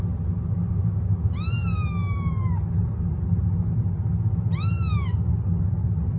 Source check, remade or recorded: recorded